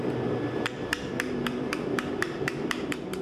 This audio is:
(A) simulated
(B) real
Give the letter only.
A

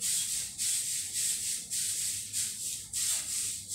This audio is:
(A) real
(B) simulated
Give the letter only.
A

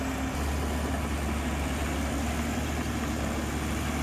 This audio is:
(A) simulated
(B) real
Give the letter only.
B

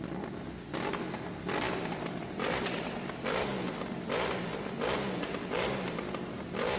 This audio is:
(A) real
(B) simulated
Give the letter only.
A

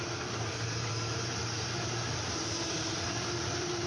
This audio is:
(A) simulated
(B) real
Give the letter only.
A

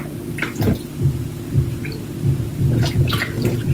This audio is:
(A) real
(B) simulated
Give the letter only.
A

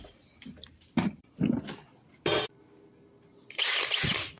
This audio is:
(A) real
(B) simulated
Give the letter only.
B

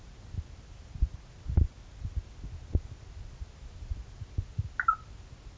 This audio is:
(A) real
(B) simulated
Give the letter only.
A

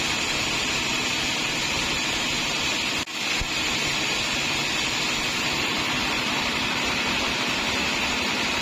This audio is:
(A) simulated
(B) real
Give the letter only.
B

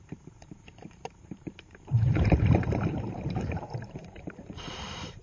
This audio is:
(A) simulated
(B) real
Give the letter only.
A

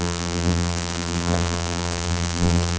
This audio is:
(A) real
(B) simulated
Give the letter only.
B